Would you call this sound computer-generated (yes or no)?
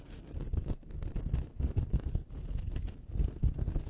no